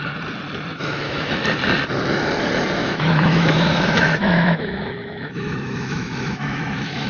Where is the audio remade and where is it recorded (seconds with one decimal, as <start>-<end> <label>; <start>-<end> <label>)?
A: 0.0-0.7 recorded; 0.7-1.3 remade; 1.3-2.8 recorded; 2.8-7.1 remade